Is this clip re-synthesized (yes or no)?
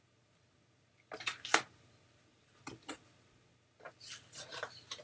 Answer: no